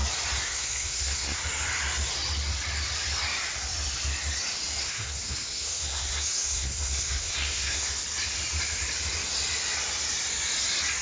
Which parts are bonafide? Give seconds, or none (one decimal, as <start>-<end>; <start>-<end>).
0.0-0.4; 1.4-4.8; 7.9-11.0